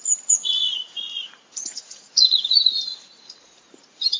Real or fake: fake